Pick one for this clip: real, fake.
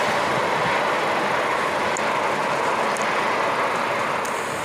real